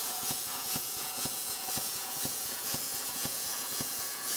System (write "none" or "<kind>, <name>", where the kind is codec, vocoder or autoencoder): vocoder, Vocos